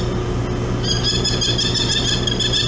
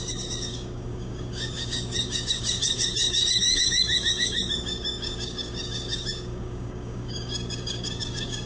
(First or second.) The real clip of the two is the first